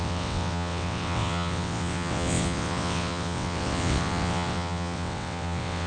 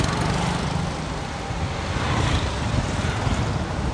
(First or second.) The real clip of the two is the second